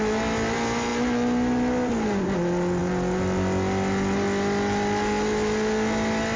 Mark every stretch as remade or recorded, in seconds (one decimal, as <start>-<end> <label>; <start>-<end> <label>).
0.0-6.4 recorded